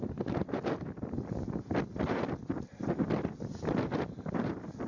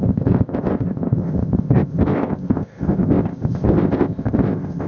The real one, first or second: first